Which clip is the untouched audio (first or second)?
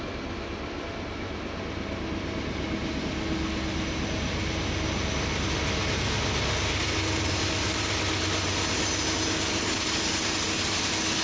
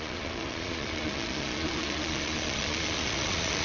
first